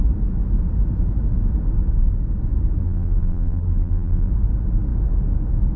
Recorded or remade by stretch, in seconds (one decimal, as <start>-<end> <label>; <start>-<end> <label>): 0.0-2.8 recorded; 2.8-4.3 remade; 4.3-5.8 recorded